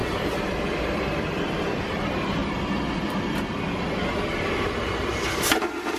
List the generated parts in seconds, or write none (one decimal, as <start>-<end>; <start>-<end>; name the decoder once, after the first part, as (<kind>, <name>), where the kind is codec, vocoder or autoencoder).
0.0-2.4 (vocoder, BigVGAN v2)